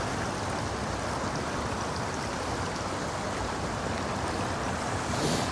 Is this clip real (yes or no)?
yes